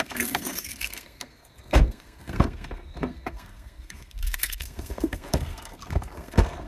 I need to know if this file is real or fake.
fake